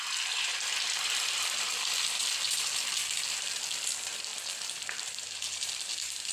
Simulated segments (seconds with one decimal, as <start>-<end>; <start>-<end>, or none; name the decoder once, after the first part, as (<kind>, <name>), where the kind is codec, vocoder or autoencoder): 4.3-6.3 (vocoder, BigVGAN v2)